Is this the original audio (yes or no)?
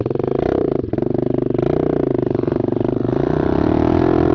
yes